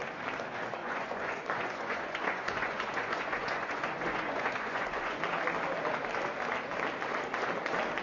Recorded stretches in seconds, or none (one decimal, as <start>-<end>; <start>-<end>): 0.0-0.8; 5.2-8.0